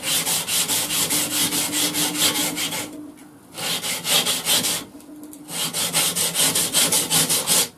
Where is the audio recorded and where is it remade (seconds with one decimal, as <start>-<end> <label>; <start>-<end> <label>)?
0.0-7.8 recorded